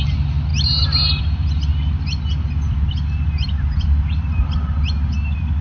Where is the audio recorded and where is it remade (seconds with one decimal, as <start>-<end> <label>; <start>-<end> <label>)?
0.0-5.6 recorded